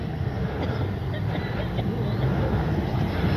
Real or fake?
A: real